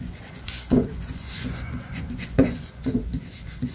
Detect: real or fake fake